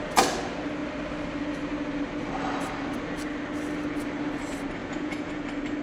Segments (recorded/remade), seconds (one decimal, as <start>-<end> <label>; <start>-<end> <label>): 0.0-4.8 recorded; 4.8-5.3 remade; 5.3-5.8 recorded

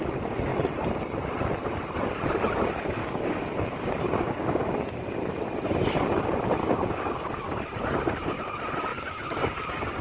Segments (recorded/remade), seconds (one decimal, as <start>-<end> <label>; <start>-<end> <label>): 0.0-3.0 recorded; 3.0-5.2 remade; 5.2-6.6 recorded; 6.6-7.3 remade; 7.3-8.9 recorded; 8.9-10.0 remade